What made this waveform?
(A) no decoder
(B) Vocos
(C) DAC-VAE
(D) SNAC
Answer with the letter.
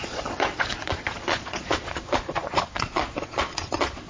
B